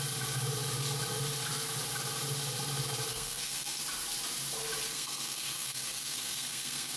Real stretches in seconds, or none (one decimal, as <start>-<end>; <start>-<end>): 0.0-3.1; 3.8-4.9